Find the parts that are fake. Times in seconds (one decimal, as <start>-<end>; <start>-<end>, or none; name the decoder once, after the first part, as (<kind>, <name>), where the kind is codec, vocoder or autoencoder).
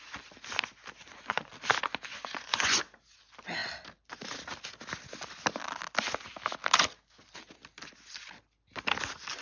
1.0-1.5 (vocoder, Vocos); 2.1-2.8